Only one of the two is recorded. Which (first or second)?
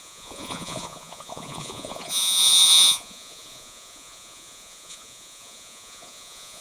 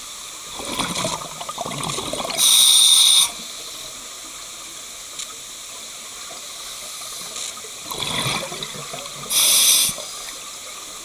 second